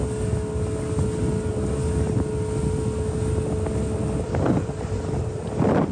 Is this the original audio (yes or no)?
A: yes